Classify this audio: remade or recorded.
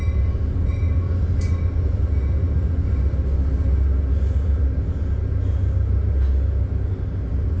recorded